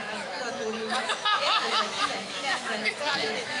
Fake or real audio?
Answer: fake